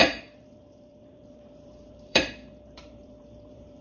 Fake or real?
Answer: fake